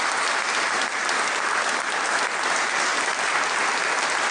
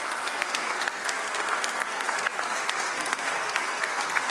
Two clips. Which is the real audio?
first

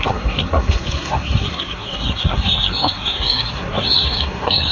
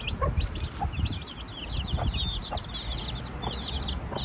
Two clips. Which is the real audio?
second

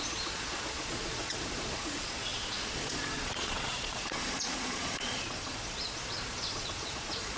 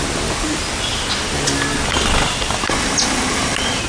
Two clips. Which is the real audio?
second